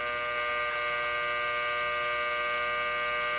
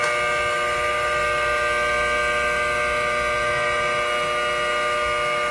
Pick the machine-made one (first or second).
second